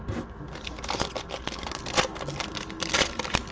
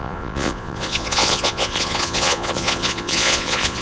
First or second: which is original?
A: first